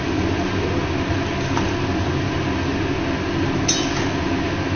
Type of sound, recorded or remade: recorded